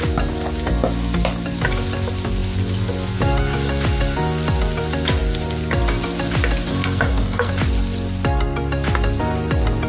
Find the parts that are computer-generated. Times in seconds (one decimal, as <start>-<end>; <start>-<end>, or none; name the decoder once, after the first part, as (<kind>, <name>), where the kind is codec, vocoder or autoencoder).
6.7-7.5 (codec, SNAC)